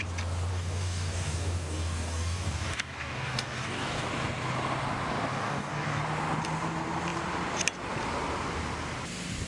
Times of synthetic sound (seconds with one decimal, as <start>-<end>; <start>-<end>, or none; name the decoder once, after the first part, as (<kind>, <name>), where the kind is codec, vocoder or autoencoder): 0.5-4.1 (codec, DAC); 5.3-6.0